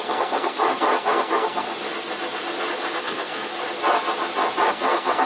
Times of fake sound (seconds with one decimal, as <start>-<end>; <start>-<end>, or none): 0.0-1.7; 3.0-3.5; 4.7-5.3